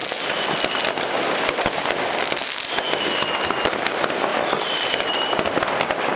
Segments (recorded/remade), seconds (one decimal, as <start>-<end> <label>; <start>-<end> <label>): 0.0-1.4 remade; 1.4-4.3 recorded; 4.3-5.6 remade; 5.6-6.2 recorded